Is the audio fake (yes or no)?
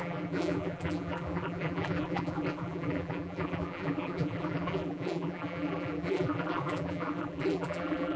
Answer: yes